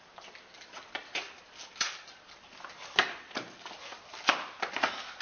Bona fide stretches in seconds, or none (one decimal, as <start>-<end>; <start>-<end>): 0.0-5.2